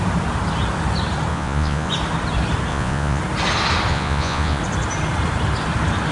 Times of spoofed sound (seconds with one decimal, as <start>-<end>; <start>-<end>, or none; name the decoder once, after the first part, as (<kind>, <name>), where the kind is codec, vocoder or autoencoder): 1.3-1.9 (vocoder, Vocos); 2.7-3.2; 3.9-4.6

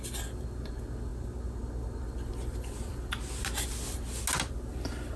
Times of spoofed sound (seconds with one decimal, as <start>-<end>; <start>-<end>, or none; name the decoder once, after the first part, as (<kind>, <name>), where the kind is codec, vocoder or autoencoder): none

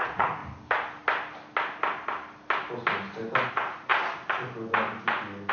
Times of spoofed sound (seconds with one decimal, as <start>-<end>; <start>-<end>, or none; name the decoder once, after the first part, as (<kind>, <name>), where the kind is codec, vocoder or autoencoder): 0.0-0.4 (vocoder, Vocos); 3.5-3.9